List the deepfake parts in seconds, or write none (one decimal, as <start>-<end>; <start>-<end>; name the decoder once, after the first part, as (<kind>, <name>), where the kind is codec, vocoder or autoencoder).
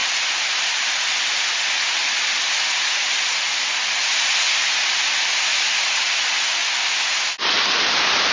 none